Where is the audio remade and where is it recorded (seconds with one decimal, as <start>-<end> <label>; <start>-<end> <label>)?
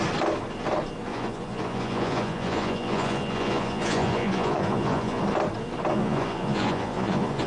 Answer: 0.0-1.1 recorded; 1.1-5.2 remade; 5.2-5.9 recorded; 5.9-7.5 remade